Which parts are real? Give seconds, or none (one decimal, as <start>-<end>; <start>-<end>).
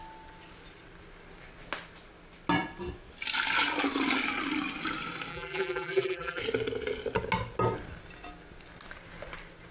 0.0-5.3; 6.4-9.7